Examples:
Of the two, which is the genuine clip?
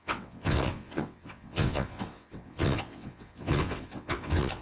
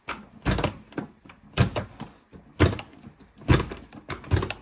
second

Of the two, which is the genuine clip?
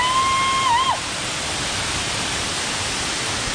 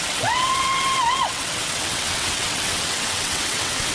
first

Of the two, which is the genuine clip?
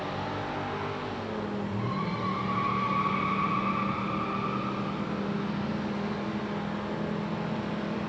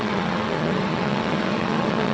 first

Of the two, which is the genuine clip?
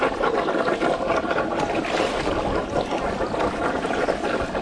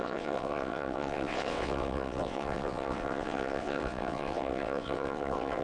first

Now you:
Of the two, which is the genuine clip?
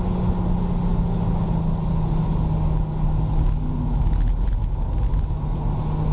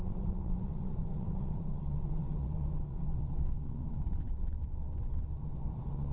first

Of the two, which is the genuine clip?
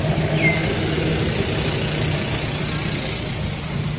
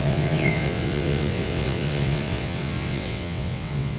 first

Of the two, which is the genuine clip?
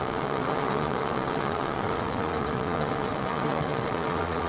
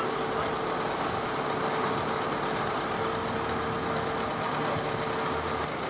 second